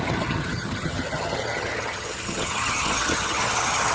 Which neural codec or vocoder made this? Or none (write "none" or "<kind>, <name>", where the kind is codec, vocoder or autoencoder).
vocoder, HiFi-GAN